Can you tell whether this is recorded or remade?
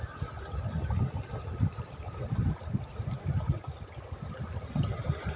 recorded